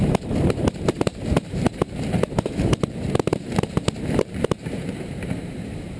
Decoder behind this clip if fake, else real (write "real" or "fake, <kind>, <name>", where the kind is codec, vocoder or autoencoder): fake, vocoder, BigVGAN v2